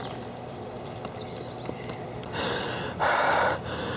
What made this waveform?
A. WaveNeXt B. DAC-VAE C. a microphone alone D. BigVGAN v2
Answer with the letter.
C